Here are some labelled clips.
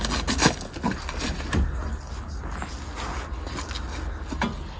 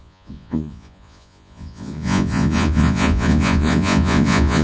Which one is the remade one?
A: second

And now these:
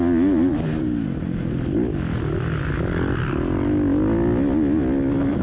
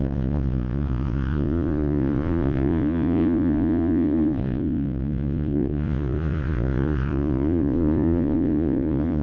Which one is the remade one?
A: second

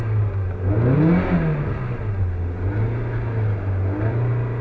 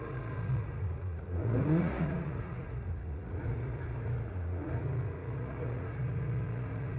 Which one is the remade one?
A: second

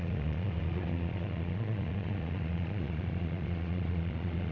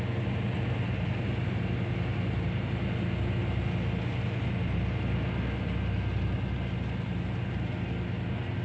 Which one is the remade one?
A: first